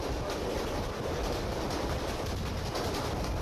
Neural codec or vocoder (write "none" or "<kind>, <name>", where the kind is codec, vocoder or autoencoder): none